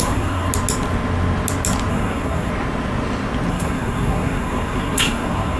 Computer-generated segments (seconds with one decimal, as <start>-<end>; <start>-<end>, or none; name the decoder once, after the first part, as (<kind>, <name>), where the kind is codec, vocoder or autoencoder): 0.0-0.5 (codec, SNAC); 1.9-2.5; 3.5-5.6